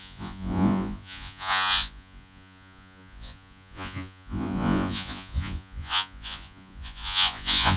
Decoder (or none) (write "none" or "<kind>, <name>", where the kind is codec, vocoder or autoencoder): vocoder, Vocos